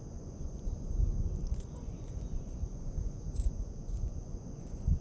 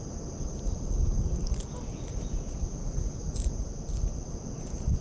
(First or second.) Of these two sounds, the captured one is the second